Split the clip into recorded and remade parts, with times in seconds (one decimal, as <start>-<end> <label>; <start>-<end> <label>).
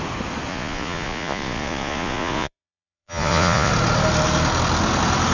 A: 0.0-0.5 recorded; 0.5-3.7 remade; 3.7-5.3 recorded